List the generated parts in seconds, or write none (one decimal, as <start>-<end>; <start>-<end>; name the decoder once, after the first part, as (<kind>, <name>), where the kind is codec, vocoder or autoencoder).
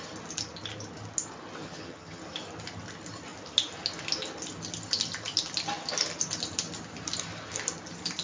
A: 1.6-2.2 (vocoder, HiFi-GAN)